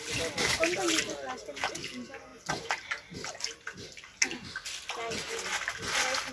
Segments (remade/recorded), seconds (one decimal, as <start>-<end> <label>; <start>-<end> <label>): 0.0-6.3 recorded